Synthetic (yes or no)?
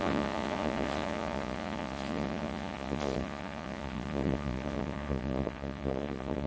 yes